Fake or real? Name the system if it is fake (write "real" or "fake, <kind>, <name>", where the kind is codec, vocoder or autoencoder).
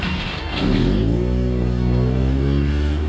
fake, codec, DAC